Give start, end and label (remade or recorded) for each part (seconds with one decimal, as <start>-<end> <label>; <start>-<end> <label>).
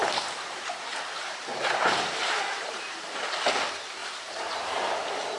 0.0-3.2 remade; 3.2-4.0 recorded; 4.0-4.8 remade; 4.8-5.4 recorded